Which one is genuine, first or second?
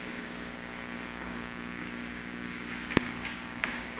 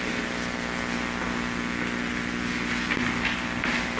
second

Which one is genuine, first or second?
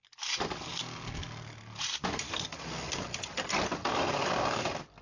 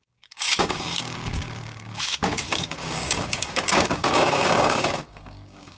first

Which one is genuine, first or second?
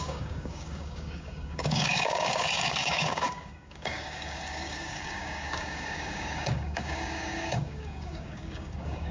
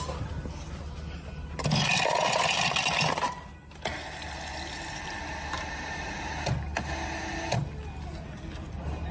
second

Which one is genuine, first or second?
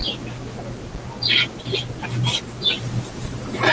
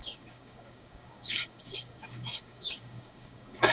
first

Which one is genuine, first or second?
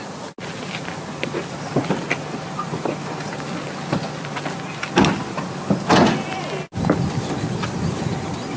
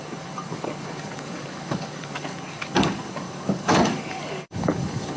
first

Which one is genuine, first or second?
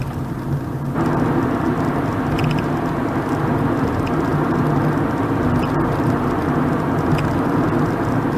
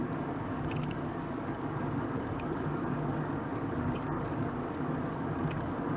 first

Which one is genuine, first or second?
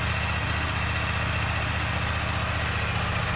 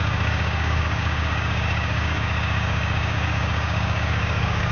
first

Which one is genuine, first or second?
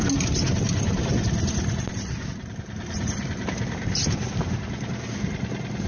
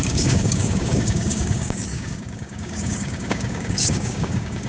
first